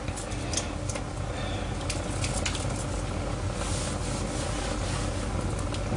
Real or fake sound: real